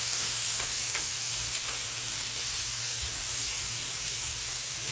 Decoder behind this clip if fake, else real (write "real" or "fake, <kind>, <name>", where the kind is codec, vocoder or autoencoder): fake, codec, DAC